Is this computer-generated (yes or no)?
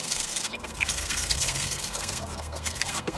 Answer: yes